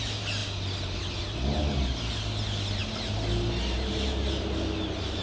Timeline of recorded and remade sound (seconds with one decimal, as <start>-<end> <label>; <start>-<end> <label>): 0.0-5.2 recorded